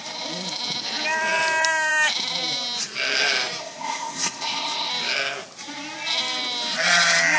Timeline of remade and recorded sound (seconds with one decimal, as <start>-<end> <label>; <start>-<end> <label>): 0.0-3.6 recorded; 3.6-4.9 remade; 4.9-7.4 recorded